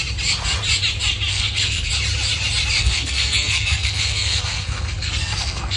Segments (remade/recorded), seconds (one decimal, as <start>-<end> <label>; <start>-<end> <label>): 0.0-1.3 recorded; 1.3-1.9 remade; 1.9-2.8 recorded; 2.8-5.8 remade